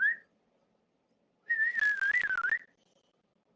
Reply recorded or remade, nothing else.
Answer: recorded